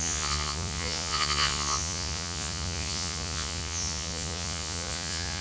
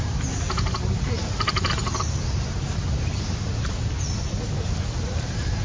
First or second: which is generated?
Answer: first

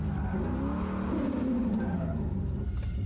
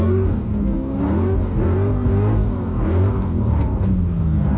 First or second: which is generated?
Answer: second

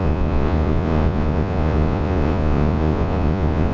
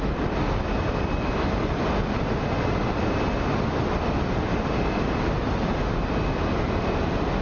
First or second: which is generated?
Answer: first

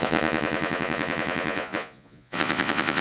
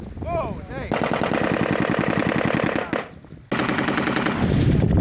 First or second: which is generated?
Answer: first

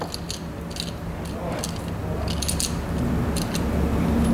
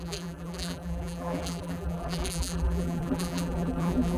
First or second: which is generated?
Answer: second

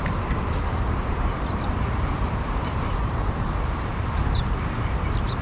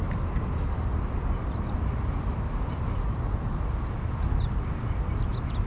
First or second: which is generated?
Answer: first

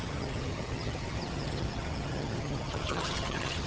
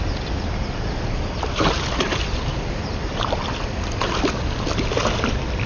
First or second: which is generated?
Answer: first